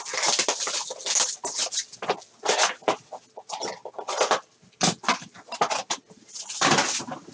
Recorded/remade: recorded